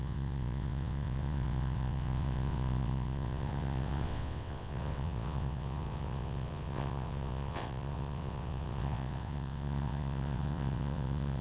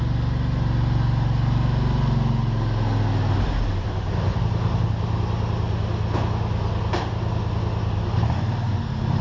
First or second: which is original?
second